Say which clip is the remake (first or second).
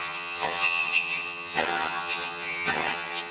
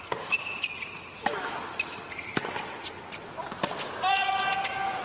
first